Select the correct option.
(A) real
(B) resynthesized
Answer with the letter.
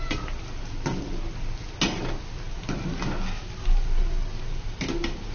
A